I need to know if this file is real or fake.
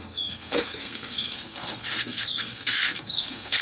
fake